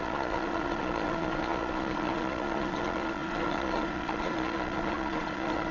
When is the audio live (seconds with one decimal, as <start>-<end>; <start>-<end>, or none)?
none